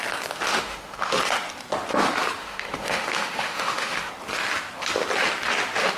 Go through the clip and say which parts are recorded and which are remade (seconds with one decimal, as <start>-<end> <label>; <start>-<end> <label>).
0.0-0.5 recorded; 0.5-1.2 remade; 1.2-2.4 recorded; 2.4-4.1 remade; 4.1-6.0 recorded